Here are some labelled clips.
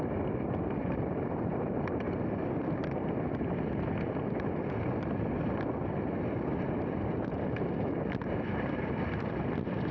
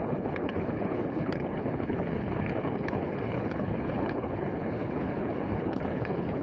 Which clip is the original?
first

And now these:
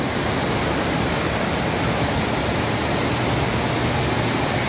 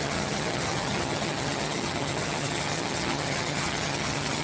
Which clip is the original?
first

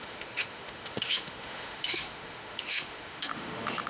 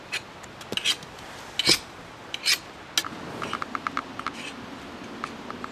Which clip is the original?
second